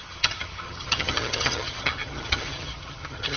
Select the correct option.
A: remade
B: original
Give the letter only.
A